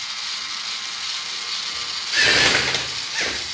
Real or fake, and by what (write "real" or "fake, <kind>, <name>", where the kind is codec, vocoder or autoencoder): real